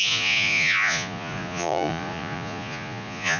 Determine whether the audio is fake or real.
fake